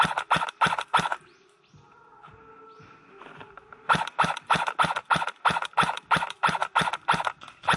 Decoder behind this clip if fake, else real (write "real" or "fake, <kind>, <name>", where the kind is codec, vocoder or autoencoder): real